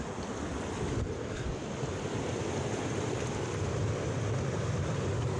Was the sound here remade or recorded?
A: recorded